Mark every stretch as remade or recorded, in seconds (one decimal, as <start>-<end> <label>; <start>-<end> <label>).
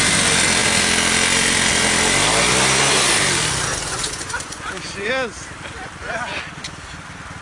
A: 0.0-3.7 recorded; 3.7-5.1 remade; 5.1-7.4 recorded